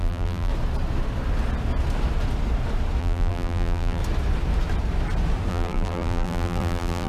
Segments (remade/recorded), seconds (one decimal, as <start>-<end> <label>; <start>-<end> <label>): 0.0-0.5 remade; 0.5-3.0 recorded; 3.0-4.0 remade; 4.0-5.5 recorded; 5.5-7.1 remade